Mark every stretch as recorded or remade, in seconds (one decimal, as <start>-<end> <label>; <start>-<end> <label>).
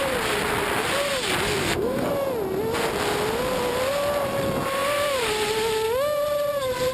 0.0-1.6 recorded; 1.6-2.1 remade; 2.1-6.9 recorded